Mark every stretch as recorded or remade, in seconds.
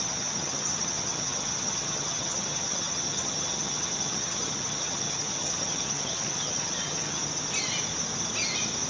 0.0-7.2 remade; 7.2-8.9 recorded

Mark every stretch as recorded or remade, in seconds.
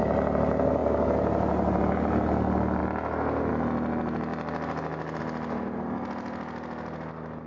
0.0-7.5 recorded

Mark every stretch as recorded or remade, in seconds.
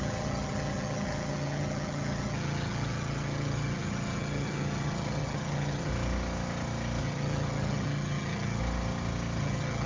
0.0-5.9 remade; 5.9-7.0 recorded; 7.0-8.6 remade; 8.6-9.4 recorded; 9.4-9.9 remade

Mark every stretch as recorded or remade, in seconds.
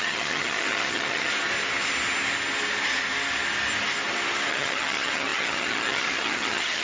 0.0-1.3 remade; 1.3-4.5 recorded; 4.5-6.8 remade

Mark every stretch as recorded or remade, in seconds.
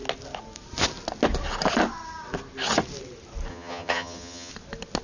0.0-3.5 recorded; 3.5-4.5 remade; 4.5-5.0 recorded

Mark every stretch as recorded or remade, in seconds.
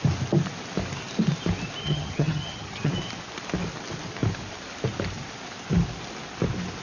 0.0-1.8 recorded; 1.8-2.9 remade; 2.9-6.8 recorded